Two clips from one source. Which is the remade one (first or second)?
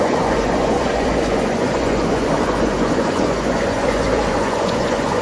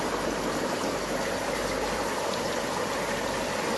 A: first